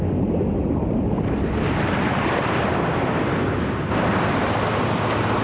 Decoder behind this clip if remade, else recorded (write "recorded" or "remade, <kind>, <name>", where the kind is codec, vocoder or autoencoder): recorded